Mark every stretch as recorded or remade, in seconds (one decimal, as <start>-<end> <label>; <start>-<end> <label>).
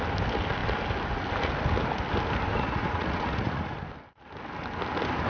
0.0-2.5 recorded; 2.5-3.8 remade; 3.8-5.3 recorded